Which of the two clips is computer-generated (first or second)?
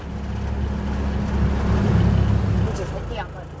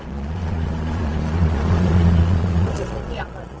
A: second